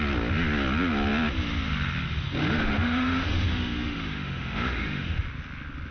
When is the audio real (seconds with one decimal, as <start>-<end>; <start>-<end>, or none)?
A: 0.0-2.4; 5.2-5.9